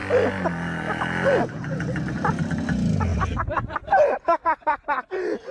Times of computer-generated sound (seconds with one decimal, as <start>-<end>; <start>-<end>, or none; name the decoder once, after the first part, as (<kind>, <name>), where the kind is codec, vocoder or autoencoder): none